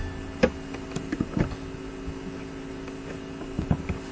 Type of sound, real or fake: real